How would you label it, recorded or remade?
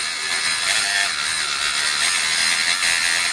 recorded